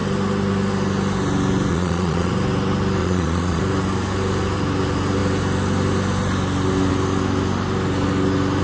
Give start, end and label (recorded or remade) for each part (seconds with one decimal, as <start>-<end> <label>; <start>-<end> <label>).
0.0-1.7 recorded; 1.7-2.3 remade; 2.3-3.0 recorded; 3.0-3.6 remade; 3.6-8.6 recorded